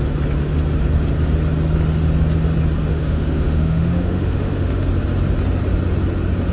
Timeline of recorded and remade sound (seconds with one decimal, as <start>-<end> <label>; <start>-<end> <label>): 0.0-2.9 recorded; 2.9-4.9 remade; 4.9-6.5 recorded